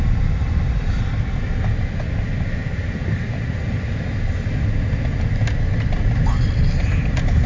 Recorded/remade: recorded